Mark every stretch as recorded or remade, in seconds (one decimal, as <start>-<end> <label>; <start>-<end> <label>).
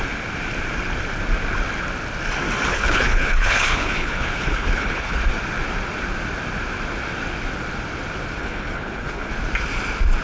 0.0-2.7 recorded; 2.7-5.2 remade; 5.2-8.4 recorded; 8.4-9.3 remade; 9.3-10.2 recorded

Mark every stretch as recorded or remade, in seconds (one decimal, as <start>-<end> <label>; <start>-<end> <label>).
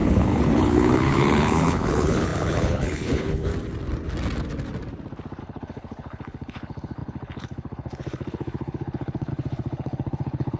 0.0-3.5 remade; 3.5-5.4 recorded; 5.4-10.6 remade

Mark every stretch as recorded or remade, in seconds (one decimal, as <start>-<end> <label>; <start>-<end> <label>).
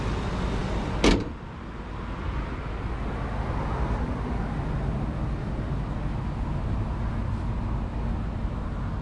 0.0-9.0 recorded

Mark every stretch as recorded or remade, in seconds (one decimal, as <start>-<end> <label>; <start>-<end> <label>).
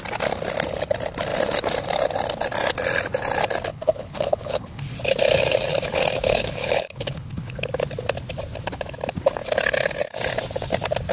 0.0-3.7 recorded; 3.7-4.9 remade; 4.9-6.2 recorded; 6.2-7.6 remade; 7.6-11.1 recorded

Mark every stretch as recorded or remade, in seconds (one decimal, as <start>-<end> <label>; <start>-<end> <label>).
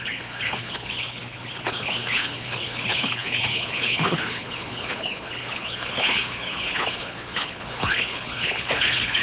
0.0-9.2 remade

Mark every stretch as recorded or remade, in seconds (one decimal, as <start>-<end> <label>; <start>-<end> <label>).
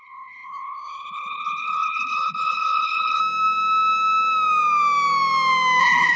0.0-3.2 remade; 3.2-5.8 recorded; 5.8-6.2 remade